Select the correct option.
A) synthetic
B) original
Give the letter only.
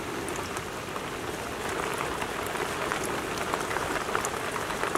B